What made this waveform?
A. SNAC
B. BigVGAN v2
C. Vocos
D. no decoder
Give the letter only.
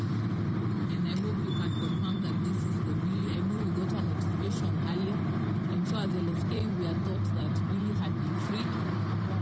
B